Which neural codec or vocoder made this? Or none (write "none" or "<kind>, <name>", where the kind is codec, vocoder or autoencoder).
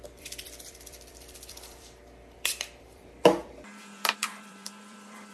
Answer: vocoder, BigVGAN v2